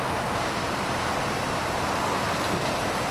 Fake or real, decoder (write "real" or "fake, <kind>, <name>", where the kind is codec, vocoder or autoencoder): fake, vocoder, BigVGAN v2